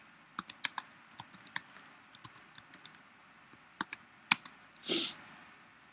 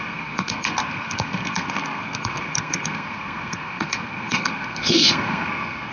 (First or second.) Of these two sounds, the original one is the first